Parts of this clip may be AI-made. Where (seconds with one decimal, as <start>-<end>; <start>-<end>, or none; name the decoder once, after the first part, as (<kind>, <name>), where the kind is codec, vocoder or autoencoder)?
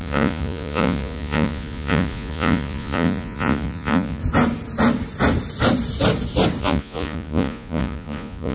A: 0.0-4.2 (vocoder, Vocos); 6.6-8.5